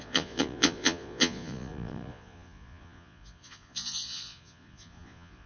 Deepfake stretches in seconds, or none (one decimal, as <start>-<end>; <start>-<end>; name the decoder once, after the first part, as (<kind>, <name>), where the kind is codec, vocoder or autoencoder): 0.0-5.5 (vocoder, Vocos)

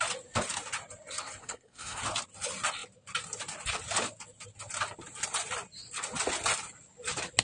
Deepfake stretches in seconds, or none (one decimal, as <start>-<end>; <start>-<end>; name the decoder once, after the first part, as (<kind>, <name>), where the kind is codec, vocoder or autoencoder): 1.4-2.0 (codec, SNAC)

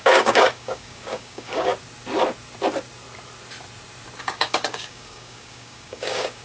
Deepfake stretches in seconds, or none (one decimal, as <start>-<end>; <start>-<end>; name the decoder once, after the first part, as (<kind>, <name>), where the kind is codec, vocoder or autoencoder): 0.0-1.7 (codec, DAC); 4.2-6.4

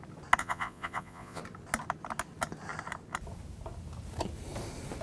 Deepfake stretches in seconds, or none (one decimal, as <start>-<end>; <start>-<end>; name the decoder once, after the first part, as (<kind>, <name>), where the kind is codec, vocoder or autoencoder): 0.4-1.4 (vocoder, Vocos)

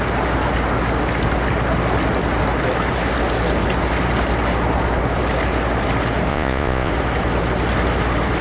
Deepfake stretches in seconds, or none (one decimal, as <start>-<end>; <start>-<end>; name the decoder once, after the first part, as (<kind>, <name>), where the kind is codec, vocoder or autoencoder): 6.3-6.9 (vocoder, Vocos)

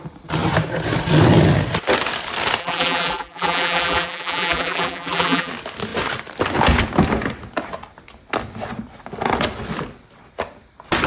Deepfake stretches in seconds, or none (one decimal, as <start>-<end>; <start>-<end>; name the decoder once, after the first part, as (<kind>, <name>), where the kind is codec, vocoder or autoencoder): 2.6-5.5 (vocoder, BigVGAN v2)